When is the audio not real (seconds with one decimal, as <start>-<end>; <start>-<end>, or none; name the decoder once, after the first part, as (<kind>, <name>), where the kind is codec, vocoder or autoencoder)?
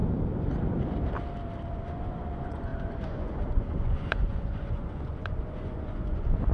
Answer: 1.7-6.5 (vocoder, Vocos)